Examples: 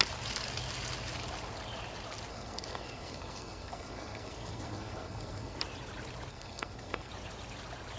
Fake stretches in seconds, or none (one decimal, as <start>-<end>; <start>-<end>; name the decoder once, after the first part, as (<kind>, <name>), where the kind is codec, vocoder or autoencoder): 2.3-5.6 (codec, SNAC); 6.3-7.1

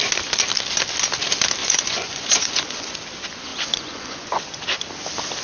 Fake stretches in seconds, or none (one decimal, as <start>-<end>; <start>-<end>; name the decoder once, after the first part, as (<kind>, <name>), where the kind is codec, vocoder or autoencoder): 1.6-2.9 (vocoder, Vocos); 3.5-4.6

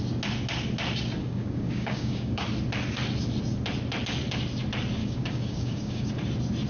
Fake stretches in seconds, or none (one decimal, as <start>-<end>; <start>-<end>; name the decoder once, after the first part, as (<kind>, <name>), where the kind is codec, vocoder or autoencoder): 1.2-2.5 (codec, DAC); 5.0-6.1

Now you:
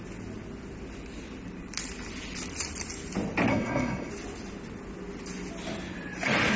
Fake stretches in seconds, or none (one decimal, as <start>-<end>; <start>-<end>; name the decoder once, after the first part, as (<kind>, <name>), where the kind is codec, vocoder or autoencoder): 3.5-4.1 (codec, SNAC)